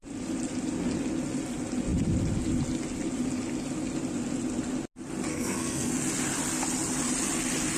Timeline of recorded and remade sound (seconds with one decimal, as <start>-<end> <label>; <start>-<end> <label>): 0.0-5.3 recorded; 5.3-5.9 remade; 5.9-7.8 recorded

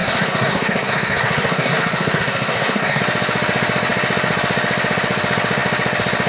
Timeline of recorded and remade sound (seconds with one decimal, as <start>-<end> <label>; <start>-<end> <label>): 0.0-3.0 remade; 3.0-6.3 recorded

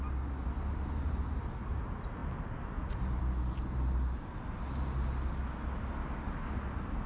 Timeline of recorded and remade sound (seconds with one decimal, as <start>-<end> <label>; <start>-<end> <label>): 0.0-7.1 recorded

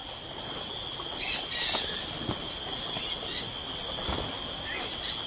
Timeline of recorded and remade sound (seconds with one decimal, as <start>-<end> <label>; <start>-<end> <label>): 0.0-5.3 recorded

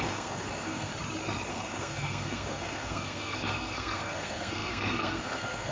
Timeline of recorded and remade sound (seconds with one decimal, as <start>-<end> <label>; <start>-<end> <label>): 0.0-0.9 remade; 0.9-1.5 recorded; 1.5-5.7 remade